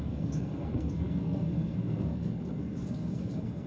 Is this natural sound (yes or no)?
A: no